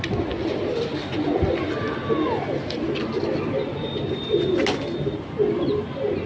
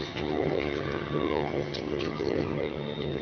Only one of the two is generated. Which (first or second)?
second